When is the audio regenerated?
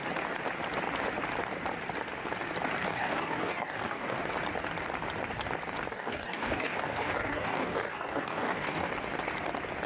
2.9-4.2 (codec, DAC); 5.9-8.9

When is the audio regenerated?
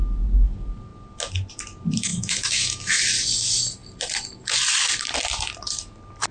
2.1-3.0 (autoencoder, DAC-VAE)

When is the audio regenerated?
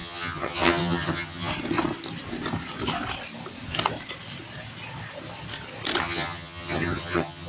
0.0-1.5 (vocoder, HiFi-GAN); 6.0-7.5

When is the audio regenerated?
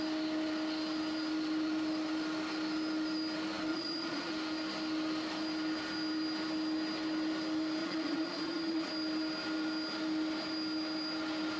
3.7-4.3 (vocoder, Vocos); 7.8-8.9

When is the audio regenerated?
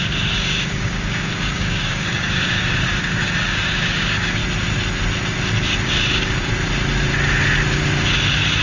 0.0-4.4 (codec, DAC); 5.9-6.5